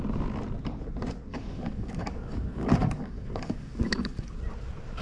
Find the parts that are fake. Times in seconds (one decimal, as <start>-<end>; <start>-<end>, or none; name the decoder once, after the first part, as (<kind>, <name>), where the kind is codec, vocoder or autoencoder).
1.3-4.3 (codec, DAC)